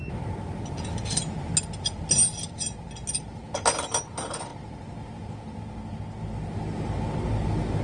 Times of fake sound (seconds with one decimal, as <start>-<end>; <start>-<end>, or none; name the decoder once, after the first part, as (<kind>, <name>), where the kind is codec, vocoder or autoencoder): none